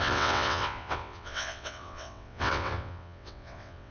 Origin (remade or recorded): remade